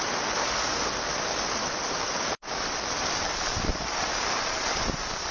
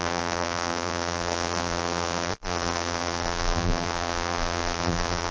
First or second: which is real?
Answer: first